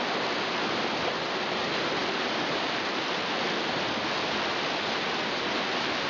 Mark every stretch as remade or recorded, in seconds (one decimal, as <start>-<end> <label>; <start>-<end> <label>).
0.0-6.1 recorded